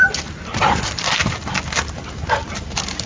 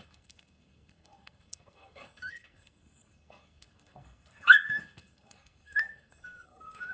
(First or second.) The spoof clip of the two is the second